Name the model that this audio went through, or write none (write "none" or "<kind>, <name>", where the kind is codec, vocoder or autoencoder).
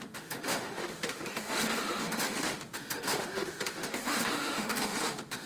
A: autoencoder, DAC-VAE